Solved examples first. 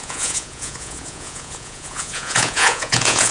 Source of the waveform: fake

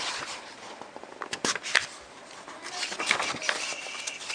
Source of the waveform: real